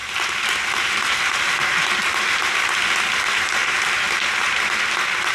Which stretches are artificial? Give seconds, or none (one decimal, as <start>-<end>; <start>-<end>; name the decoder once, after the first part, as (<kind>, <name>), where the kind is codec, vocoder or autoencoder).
3.6-4.8 (vocoder, BigVGAN v2)